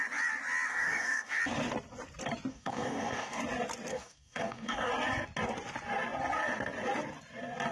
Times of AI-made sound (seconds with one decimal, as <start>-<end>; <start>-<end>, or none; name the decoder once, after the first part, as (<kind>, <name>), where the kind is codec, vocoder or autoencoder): 0.7-1.4 (codec, DAC); 2.5-3.4; 3.9-4.9